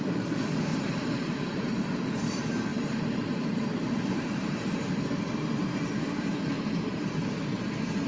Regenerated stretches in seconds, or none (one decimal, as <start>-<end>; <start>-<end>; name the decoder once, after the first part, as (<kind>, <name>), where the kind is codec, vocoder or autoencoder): 0.7-1.5 (vocoder, BigVGAN v2); 2.7-5.2; 6.3-7.0